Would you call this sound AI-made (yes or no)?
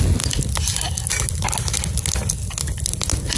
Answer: no